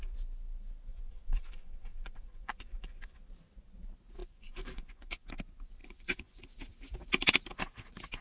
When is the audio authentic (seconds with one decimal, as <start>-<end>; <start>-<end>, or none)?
0.0-0.9; 3.2-4.2; 5.3-5.8; 6.4-8.2